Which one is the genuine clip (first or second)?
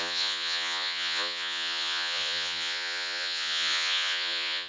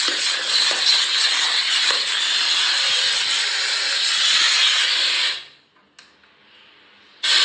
second